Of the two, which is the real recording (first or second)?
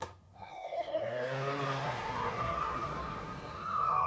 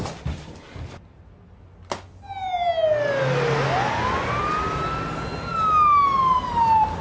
second